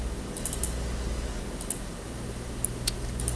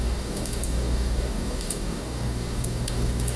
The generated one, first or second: second